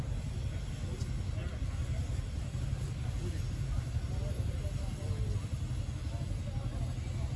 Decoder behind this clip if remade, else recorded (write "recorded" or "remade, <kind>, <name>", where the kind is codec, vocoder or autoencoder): recorded